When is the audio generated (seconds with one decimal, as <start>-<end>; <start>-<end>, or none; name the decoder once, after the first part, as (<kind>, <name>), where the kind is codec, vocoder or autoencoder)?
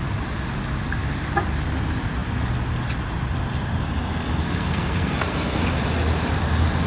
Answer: 4.4-5.6 (codec, SNAC)